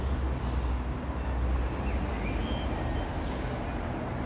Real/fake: real